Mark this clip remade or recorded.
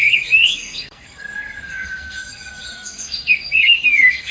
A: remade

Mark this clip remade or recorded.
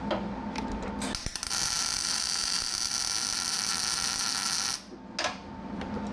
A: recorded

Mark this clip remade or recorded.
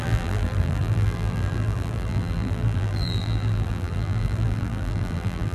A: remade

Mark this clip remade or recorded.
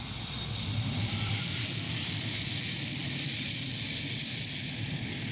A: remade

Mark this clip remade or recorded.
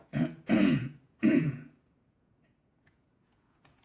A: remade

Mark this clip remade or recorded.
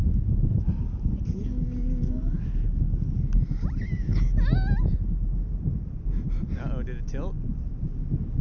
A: recorded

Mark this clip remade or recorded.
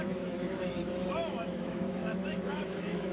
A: remade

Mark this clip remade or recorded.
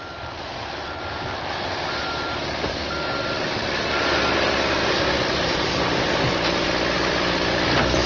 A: recorded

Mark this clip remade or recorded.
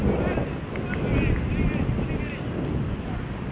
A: recorded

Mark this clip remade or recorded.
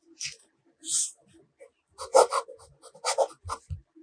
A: recorded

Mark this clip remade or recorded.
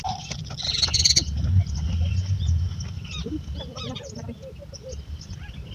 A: recorded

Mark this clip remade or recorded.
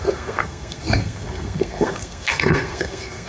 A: remade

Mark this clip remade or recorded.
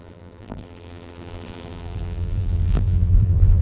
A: remade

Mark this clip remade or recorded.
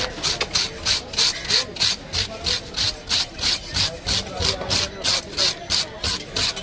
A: recorded